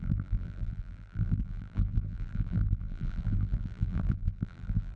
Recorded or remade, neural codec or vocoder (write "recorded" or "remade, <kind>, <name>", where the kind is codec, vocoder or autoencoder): remade, vocoder, BigVGAN v2